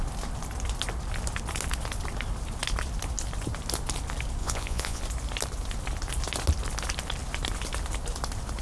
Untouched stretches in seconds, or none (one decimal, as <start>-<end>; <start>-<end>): 0.0-4.4; 5.0-8.6